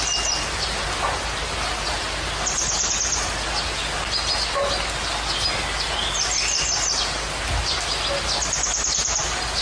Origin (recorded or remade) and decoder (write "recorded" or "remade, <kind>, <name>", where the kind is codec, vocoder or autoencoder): recorded